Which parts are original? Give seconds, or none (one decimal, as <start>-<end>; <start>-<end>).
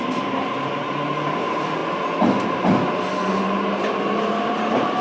1.8-3.4